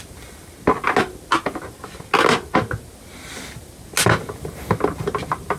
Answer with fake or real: real